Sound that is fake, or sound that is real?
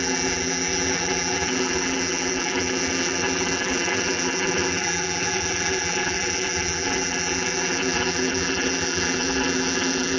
fake